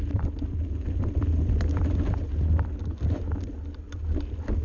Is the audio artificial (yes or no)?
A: no